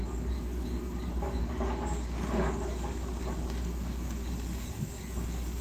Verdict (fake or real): fake